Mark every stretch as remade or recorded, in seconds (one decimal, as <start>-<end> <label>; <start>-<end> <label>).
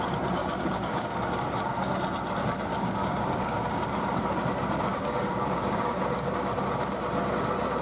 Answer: 0.0-0.4 recorded; 0.4-2.0 remade; 2.0-2.7 recorded; 2.7-4.2 remade; 4.2-4.9 recorded; 4.9-6.3 remade; 6.3-7.8 recorded